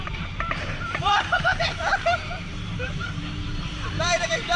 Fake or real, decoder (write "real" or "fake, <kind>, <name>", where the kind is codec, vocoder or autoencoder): fake, vocoder, BigVGAN v2